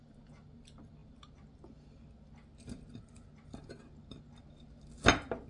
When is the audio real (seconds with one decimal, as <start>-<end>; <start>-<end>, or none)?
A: 0.0-5.5